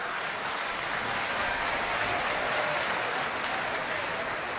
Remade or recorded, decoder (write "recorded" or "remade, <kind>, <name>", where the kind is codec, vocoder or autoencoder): recorded